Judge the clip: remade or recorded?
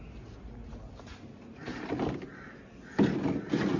recorded